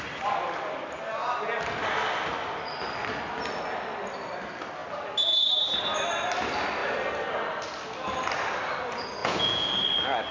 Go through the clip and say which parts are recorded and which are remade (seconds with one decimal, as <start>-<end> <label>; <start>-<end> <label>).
0.0-9.2 recorded; 9.2-9.7 remade; 9.7-10.3 recorded